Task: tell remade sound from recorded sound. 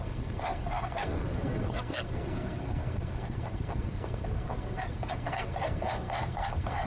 remade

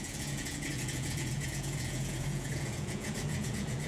remade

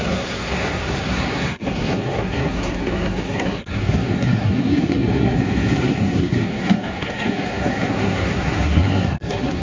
remade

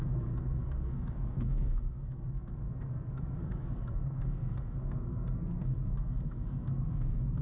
remade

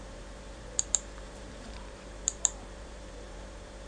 remade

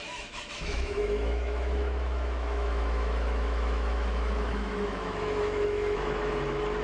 remade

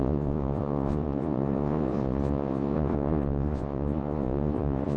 remade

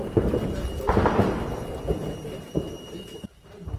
remade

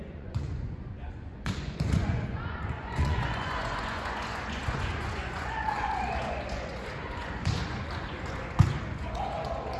remade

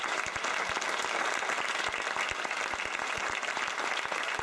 remade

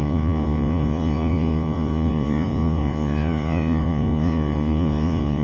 remade